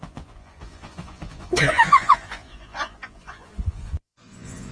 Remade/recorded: remade